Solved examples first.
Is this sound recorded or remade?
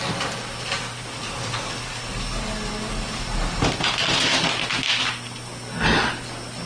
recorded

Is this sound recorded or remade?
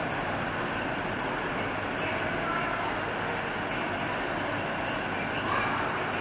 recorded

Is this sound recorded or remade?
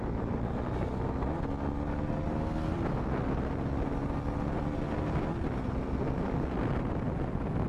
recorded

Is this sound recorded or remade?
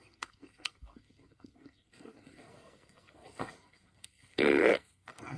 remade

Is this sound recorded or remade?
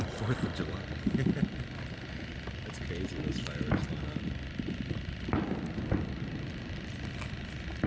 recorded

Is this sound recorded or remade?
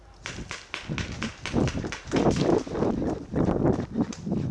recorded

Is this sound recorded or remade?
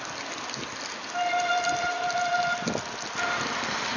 recorded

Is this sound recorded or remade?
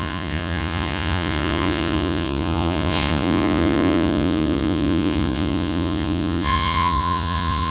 remade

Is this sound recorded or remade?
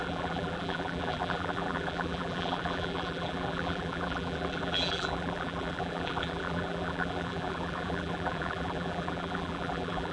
remade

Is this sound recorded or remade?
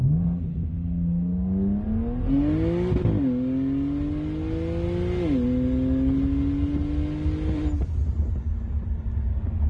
recorded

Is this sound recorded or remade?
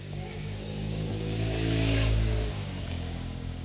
remade